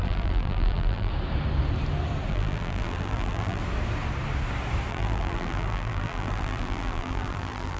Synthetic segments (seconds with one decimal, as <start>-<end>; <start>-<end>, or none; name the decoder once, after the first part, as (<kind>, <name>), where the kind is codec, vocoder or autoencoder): 0.0-1.1 (vocoder, BigVGAN v2); 2.3-3.6; 4.9-7.8